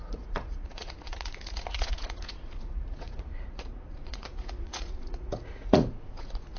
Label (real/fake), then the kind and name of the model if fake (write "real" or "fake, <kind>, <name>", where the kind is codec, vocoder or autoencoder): fake, vocoder, Vocos